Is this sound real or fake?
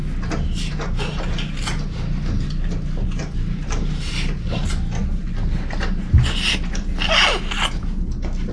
real